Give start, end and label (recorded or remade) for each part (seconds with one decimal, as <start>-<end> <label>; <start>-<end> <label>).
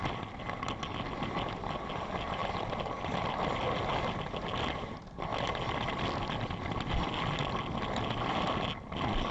0.0-9.3 recorded